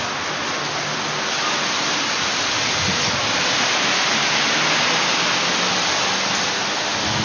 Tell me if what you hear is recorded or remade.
recorded